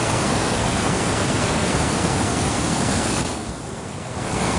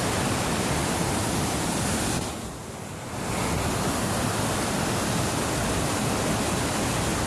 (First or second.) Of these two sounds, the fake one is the first